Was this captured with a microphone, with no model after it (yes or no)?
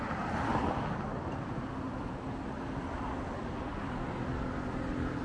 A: yes